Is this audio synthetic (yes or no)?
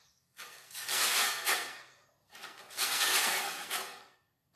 yes